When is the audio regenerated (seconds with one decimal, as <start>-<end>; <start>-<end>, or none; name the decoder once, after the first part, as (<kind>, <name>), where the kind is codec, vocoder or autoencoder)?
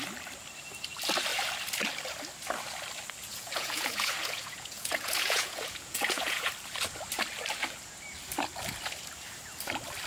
3.2-6.5 (vocoder, Vocos)